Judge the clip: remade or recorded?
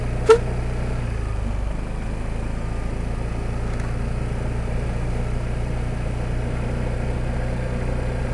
recorded